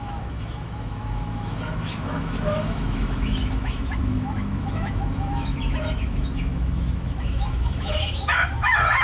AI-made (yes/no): yes